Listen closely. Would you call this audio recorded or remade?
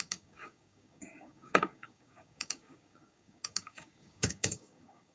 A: remade